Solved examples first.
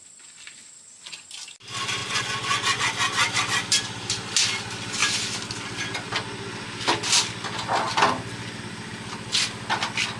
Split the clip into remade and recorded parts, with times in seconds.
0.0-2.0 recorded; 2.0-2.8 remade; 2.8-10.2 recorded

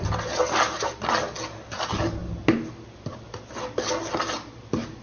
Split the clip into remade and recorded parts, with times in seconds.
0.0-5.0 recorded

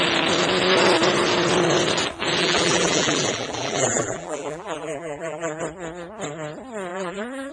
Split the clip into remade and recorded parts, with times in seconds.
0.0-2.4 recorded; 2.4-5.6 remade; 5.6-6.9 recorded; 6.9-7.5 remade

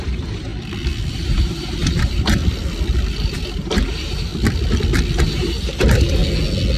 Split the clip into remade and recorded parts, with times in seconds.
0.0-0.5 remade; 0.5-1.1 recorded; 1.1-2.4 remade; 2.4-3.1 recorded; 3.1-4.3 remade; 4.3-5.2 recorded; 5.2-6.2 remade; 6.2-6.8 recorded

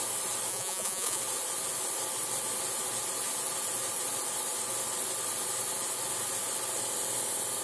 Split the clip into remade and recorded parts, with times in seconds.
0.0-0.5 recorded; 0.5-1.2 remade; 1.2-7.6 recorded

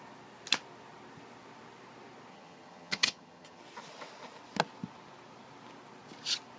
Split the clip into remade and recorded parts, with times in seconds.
0.0-2.3 recorded; 2.3-3.6 remade; 3.6-6.6 recorded

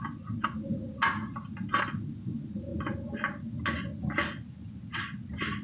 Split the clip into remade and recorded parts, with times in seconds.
0.0-5.6 recorded

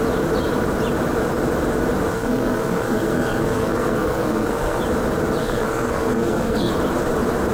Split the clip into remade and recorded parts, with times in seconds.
0.0-2.1 recorded; 2.1-4.8 remade; 4.8-5.4 recorded; 5.4-6.7 remade; 6.7-7.5 recorded